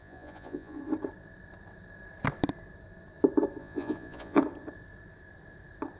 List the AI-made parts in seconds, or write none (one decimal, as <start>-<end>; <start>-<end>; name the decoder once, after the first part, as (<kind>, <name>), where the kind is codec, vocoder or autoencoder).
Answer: 0.0-0.8 (vocoder, Vocos); 3.6-4.4